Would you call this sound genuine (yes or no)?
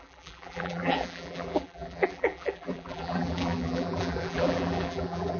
no